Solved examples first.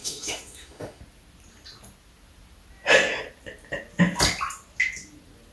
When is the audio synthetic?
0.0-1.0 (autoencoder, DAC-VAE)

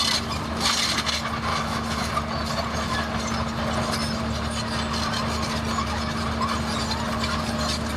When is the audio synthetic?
1.5-2.1 (autoencoder, DAC-VAE)

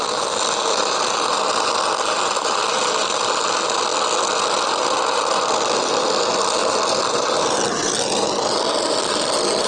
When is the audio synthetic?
none

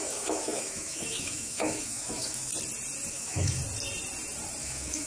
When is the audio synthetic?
0.0-2.5 (autoencoder, DAC-VAE); 3.1-3.6; 4.6-5.1

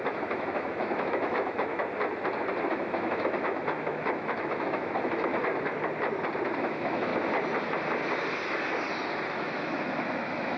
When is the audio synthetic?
0.0-1.8 (autoencoder, DAC-VAE); 2.7-5.3; 6.6-7.1; 9.3-10.6

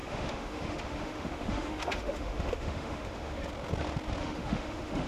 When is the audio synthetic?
0.0-3.4 (autoencoder, DAC-VAE); 4.2-5.1

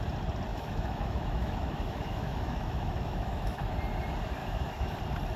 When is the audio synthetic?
0.5-3.7 (autoencoder, DAC-VAE); 4.4-5.0

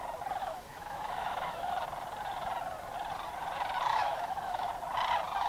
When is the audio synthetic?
0.4-1.7 (autoencoder, DAC-VAE); 3.9-4.7